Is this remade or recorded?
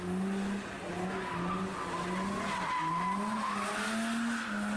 recorded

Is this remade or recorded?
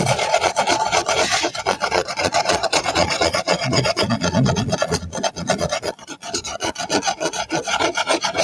remade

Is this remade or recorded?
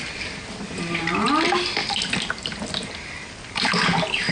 recorded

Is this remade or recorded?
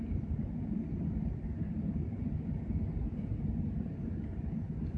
recorded